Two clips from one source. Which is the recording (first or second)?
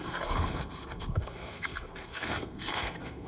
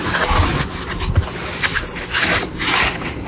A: second